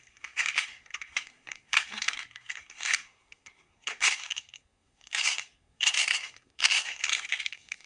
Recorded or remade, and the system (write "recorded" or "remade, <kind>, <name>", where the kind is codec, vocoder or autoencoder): remade, codec, SNAC